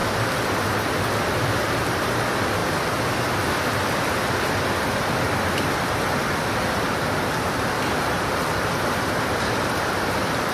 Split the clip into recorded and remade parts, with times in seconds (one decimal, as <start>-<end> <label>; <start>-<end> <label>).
0.0-2.6 remade; 2.6-7.4 recorded; 7.4-10.5 remade